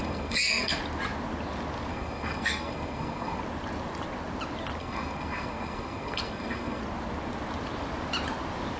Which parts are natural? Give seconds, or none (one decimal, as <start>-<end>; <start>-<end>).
0.8-1.9; 3.4-4.8; 6.8-8.8